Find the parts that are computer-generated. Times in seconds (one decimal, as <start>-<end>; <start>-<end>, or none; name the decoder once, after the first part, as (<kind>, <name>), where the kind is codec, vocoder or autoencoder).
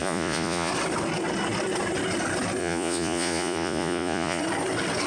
0.0-0.7 (vocoder, Vocos); 2.6-4.4